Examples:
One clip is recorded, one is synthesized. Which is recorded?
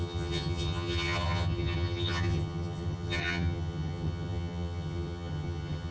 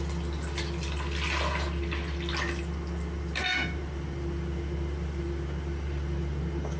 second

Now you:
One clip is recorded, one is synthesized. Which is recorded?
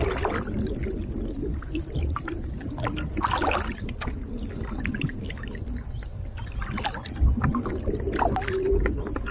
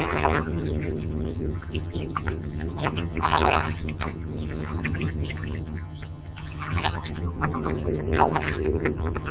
first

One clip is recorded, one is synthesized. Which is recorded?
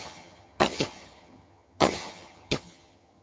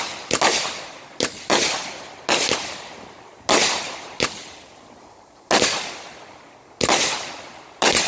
second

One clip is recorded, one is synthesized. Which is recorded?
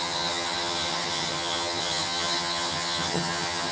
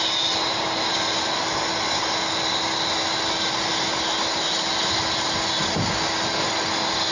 second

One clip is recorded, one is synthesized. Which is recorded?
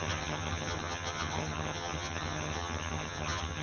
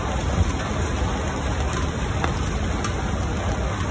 second